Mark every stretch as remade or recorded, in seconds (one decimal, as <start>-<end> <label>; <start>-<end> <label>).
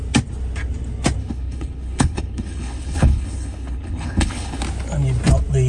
0.0-1.2 recorded; 1.2-4.6 remade; 4.6-5.7 recorded